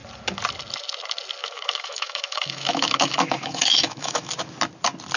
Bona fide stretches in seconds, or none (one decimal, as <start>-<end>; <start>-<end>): 0.0-1.4; 4.3-5.2